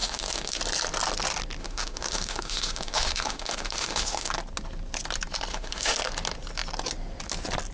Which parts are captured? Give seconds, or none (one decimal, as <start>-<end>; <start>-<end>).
0.6-1.6; 4.3-5.5; 6.0-7.7